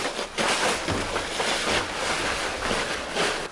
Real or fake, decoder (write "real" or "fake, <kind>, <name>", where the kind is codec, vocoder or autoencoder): real